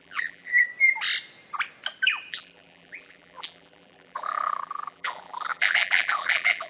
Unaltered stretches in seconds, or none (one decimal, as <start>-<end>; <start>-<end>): 0.5-2.3